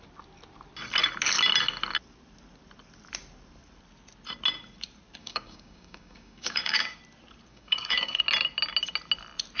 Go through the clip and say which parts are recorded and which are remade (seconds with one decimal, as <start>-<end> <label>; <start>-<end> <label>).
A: 0.0-5.2 recorded; 5.2-7.0 remade; 7.0-7.5 recorded; 7.5-8.2 remade; 8.2-9.6 recorded

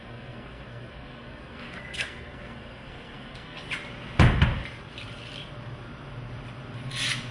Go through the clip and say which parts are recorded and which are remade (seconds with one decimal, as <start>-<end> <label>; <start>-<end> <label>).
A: 0.0-3.7 remade; 3.7-7.3 recorded

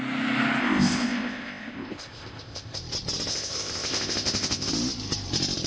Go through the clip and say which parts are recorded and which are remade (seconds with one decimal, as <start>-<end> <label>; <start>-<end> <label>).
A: 0.0-0.6 recorded; 0.6-2.8 remade; 2.8-3.3 recorded; 3.3-4.7 remade; 4.7-5.7 recorded

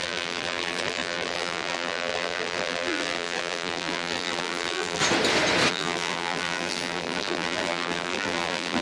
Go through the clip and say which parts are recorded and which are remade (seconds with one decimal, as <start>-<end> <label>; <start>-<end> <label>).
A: 0.0-5.0 remade; 5.0-5.7 recorded; 5.7-8.8 remade

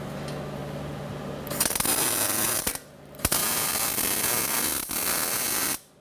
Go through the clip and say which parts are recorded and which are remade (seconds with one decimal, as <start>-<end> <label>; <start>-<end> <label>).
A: 0.0-6.0 recorded